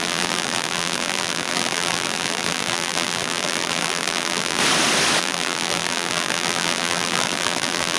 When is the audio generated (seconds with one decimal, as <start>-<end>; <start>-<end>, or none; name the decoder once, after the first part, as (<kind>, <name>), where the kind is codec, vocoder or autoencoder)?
0.0-4.6 (vocoder, BigVGAN v2); 5.2-8.0